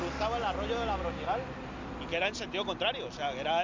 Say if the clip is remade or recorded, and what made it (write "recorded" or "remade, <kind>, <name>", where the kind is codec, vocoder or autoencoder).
recorded